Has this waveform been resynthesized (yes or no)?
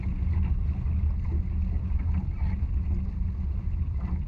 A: no